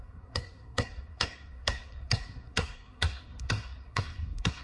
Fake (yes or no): yes